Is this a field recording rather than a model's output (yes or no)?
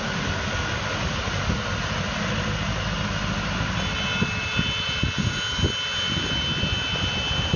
yes